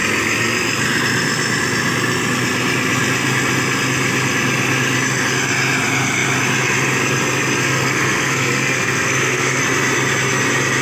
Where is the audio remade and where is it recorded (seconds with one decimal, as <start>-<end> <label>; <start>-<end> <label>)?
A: 0.0-7.6 recorded; 7.6-9.6 remade; 9.6-10.8 recorded

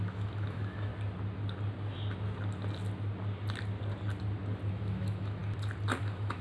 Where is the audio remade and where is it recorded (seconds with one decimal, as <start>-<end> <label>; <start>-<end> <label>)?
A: 0.0-0.9 remade; 0.9-4.7 recorded; 4.7-5.4 remade; 5.4-6.0 recorded; 6.0-6.4 remade

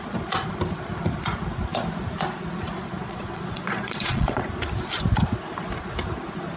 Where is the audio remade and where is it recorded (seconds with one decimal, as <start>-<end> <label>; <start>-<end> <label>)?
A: 0.0-3.0 recorded; 3.0-4.5 remade; 4.5-6.6 recorded

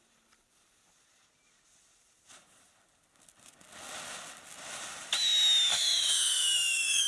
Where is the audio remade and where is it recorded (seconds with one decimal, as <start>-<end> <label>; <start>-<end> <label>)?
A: 0.0-5.7 recorded; 5.7-7.1 remade

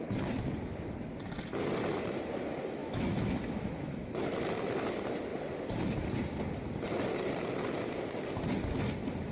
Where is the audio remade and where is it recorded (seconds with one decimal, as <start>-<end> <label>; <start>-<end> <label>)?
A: 0.0-2.8 recorded; 2.8-4.3 remade; 4.3-9.3 recorded

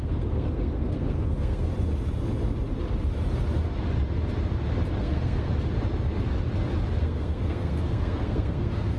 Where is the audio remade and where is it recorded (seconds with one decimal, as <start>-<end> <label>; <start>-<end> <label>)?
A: 0.0-1.7 remade; 1.7-5.0 recorded; 5.0-5.5 remade; 5.5-7.0 recorded; 7.0-9.0 remade

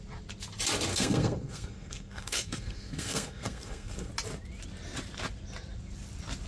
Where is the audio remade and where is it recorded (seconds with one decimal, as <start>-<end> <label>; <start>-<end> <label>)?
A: 0.0-0.9 recorded; 0.9-4.1 remade; 4.1-6.5 recorded